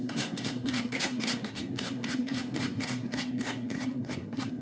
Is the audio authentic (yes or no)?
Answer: no